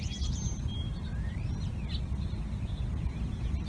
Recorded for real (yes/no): yes